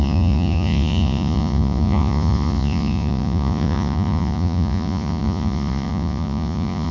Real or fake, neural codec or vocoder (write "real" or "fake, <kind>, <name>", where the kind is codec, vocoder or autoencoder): fake, vocoder, Vocos